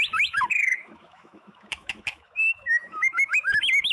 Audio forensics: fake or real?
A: fake